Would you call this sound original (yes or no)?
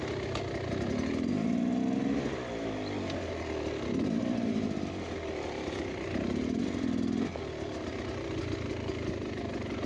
yes